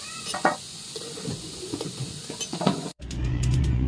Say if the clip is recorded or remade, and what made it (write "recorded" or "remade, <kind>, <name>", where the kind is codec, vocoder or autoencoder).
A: remade, vocoder, Vocos